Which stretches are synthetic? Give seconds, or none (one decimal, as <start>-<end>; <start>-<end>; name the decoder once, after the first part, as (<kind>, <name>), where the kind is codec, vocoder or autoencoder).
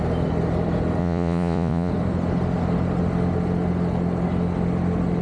1.0-1.9 (vocoder, Vocos)